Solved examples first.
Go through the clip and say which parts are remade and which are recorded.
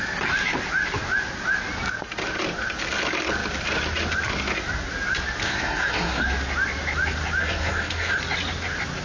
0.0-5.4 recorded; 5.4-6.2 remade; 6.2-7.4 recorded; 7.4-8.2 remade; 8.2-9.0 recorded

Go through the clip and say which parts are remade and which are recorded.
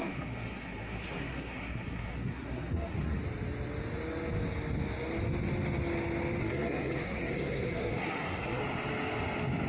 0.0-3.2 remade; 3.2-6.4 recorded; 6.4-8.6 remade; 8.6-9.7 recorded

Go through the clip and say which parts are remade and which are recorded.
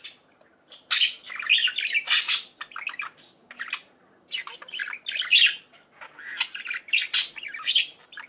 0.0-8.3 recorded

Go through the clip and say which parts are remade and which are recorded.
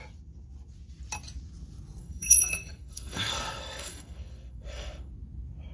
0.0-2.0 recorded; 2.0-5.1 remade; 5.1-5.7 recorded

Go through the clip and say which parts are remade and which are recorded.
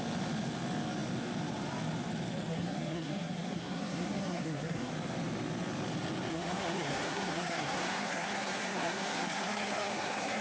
0.0-2.5 recorded; 2.5-4.9 remade; 4.9-6.3 recorded; 6.3-10.4 remade